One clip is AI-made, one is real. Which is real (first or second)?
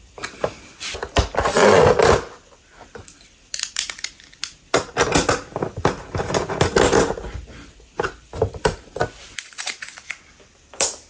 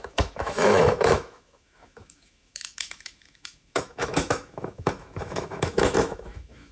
first